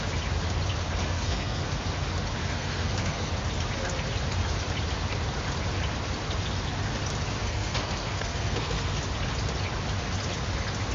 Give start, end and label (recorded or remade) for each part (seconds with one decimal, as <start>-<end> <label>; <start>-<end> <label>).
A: 0.0-1.0 recorded; 1.0-1.7 remade; 1.7-2.4 recorded; 2.4-3.3 remade; 3.3-7.4 recorded; 7.4-9.0 remade; 9.0-10.9 recorded